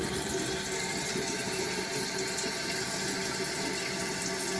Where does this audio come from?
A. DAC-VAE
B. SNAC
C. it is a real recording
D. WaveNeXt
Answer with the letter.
C